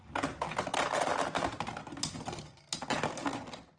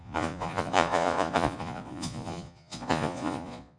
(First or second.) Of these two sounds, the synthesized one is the second